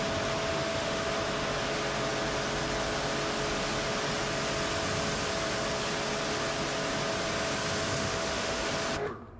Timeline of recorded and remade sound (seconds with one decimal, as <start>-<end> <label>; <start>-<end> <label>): 0.0-0.5 recorded; 0.5-1.1 remade; 1.1-8.0 recorded; 8.0-8.7 remade; 8.7-9.4 recorded

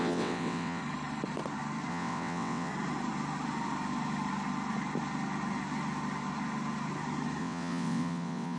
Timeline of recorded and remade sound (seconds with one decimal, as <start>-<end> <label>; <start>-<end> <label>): 0.0-0.8 remade; 0.8-1.9 recorded; 1.9-2.7 remade; 2.7-7.4 recorded; 7.4-8.6 remade

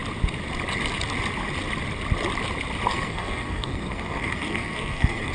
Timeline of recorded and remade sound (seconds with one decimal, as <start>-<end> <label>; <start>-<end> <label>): 0.0-2.9 recorded; 2.9-5.3 remade

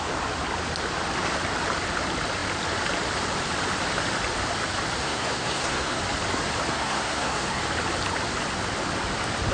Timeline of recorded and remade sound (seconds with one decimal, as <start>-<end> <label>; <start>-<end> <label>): 0.0-5.0 recorded; 5.0-6.0 remade; 6.0-6.7 recorded; 6.7-7.6 remade; 7.6-9.5 recorded

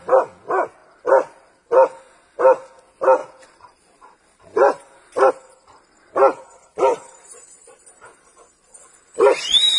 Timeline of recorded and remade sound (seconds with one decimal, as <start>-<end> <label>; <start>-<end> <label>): 0.0-3.2 recorded; 3.2-5.3 remade; 5.3-6.9 recorded; 6.9-7.8 remade; 7.8-9.8 recorded

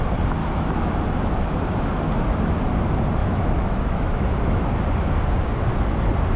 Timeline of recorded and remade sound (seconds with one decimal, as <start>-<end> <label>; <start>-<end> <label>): 0.0-0.4 recorded; 0.4-0.9 remade; 0.9-3.2 recorded; 3.2-4.7 remade; 4.7-6.4 recorded

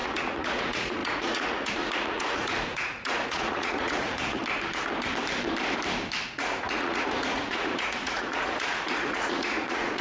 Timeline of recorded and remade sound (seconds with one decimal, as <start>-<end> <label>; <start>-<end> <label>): 0.0-4.4 remade; 4.4-6.3 recorded; 6.3-10.0 remade